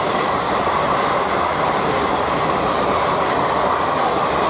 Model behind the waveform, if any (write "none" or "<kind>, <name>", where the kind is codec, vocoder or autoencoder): none